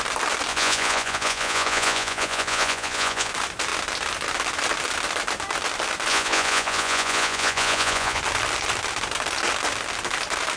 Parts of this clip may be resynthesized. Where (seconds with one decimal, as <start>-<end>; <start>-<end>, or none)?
0.5-3.3; 6.1-8.2